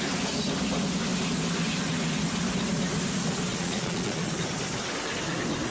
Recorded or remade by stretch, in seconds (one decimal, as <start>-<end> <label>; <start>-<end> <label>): 0.0-3.5 recorded; 3.5-4.3 remade; 4.3-5.7 recorded

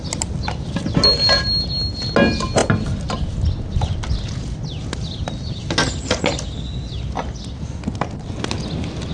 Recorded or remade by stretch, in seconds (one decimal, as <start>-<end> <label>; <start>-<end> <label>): 0.0-9.1 recorded